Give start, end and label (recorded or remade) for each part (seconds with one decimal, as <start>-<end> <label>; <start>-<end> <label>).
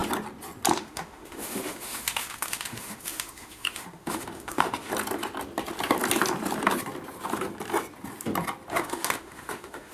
0.0-0.7 recorded; 0.7-4.9 remade; 4.9-8.7 recorded; 8.7-9.9 remade